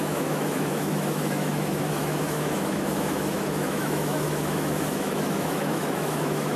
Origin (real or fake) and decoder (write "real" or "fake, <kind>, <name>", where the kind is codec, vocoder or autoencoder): fake, autoencoder, DAC-VAE